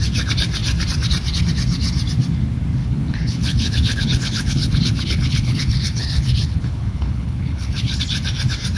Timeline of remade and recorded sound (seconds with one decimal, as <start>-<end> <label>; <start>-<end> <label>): 0.0-2.8 recorded; 2.8-8.0 remade; 8.0-8.8 recorded